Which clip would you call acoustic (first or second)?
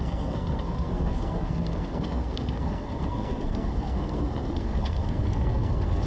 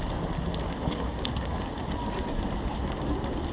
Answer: second